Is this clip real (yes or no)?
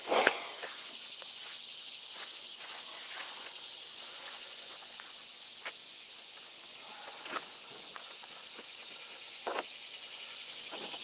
no